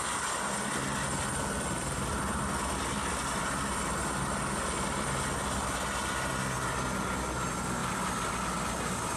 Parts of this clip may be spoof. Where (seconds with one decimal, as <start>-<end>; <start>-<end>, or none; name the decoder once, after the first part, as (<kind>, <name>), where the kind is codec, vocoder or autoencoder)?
none